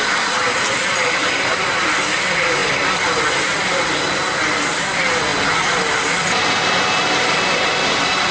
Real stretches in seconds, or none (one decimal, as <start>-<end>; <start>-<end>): 0.0-8.3